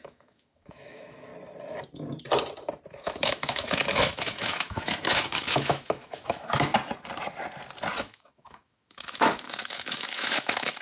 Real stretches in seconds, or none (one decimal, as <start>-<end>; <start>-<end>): 1.3-2.9; 6.7-8.0